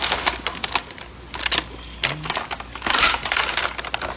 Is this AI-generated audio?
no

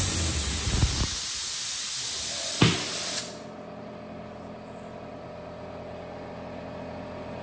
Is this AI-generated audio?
no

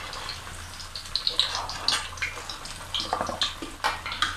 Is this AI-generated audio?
no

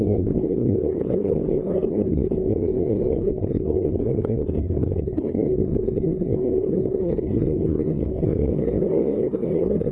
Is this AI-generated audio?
yes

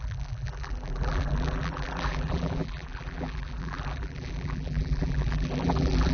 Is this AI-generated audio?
yes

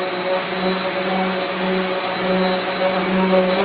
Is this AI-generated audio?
no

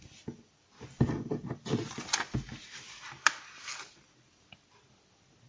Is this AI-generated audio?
no